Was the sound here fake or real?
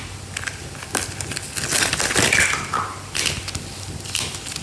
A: real